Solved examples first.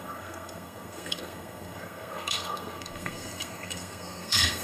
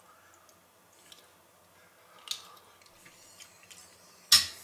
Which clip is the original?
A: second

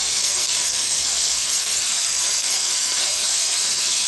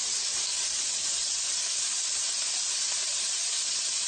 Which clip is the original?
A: second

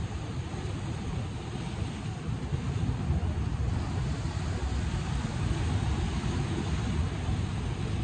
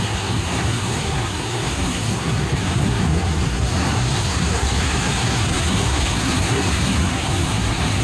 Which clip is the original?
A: first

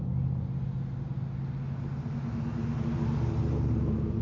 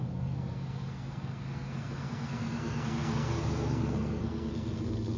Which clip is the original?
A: first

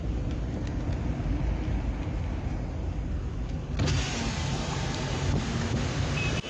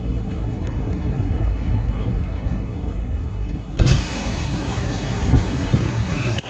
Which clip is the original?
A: first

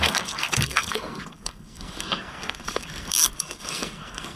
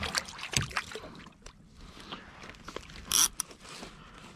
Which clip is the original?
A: second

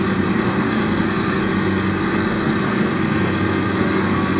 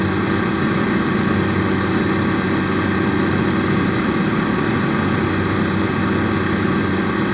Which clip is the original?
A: second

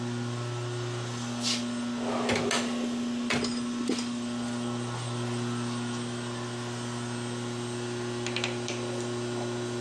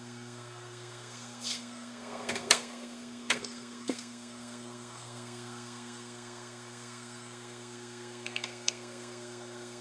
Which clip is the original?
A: first